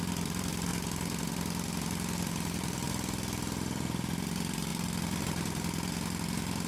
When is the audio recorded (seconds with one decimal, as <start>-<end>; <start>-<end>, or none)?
0.7-2.9